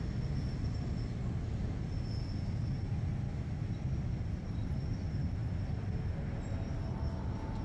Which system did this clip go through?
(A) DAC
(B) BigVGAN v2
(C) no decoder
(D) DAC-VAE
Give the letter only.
C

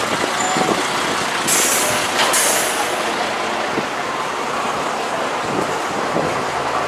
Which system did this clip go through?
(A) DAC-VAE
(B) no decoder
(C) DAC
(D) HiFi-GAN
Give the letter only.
B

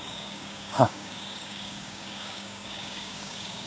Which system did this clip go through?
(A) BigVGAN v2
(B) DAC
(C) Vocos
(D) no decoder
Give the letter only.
B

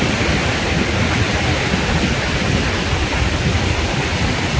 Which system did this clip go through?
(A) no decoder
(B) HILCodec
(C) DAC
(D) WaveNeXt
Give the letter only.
A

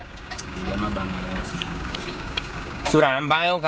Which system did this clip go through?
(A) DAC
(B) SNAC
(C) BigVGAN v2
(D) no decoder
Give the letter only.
A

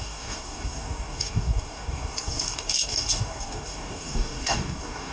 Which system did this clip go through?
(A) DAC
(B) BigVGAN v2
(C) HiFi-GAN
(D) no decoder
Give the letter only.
A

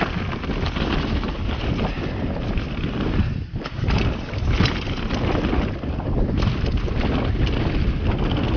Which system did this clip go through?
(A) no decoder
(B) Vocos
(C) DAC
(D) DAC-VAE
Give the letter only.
A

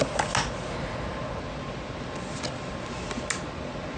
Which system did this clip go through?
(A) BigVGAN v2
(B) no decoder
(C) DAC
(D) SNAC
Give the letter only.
B